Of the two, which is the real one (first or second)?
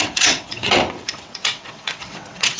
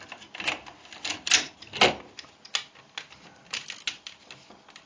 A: second